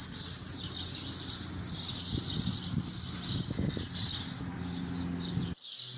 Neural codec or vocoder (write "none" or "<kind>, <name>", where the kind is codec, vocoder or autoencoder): none